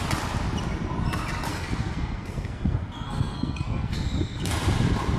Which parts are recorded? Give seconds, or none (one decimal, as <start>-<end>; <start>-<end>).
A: 0.0-1.5; 4.5-5.2